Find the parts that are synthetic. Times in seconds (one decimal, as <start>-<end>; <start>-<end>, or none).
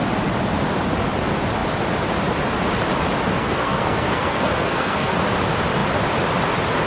3.4-5.1